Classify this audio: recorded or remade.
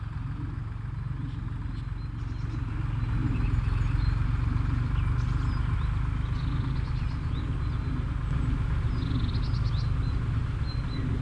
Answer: recorded